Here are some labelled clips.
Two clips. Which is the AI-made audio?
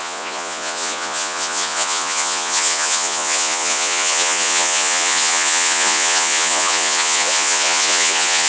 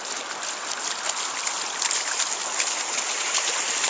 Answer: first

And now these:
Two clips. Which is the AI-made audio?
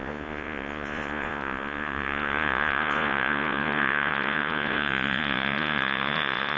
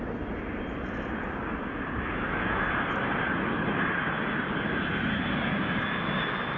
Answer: first